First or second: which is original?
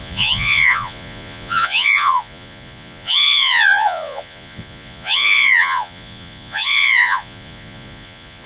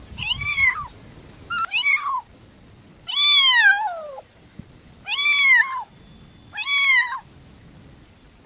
second